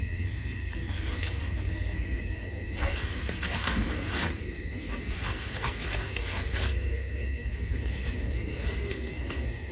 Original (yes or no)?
no